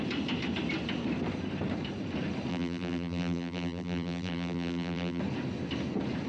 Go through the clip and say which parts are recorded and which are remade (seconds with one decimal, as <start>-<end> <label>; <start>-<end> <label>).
0.0-2.5 recorded; 2.5-5.2 remade; 5.2-6.3 recorded